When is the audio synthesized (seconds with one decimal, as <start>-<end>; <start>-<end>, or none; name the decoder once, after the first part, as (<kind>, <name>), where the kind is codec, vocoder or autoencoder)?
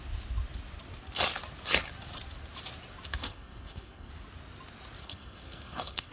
3.2-4.1 (codec, SNAC); 5.0-6.1